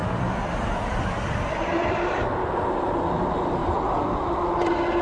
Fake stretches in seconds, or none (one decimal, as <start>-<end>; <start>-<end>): 0.0-2.3; 3.6-4.2